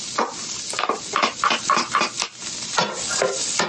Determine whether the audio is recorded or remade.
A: recorded